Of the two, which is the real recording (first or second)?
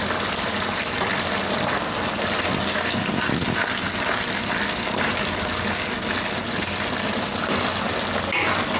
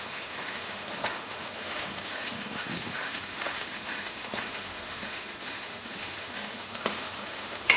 first